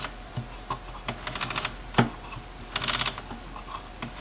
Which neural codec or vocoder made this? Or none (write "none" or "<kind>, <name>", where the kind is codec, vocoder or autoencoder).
none